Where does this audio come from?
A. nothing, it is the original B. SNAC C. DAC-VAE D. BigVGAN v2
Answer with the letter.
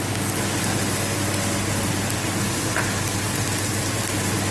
A